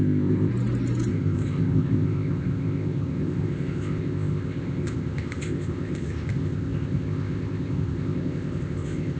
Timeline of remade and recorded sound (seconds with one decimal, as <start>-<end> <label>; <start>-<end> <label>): 0.0-0.5 remade; 0.5-1.1 recorded; 1.1-9.2 remade